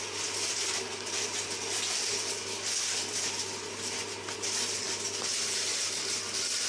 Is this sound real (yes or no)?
yes